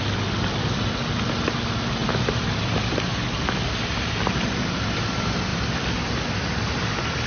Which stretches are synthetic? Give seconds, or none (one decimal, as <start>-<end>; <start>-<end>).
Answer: 5.5-6.8